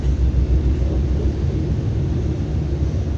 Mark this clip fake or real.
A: real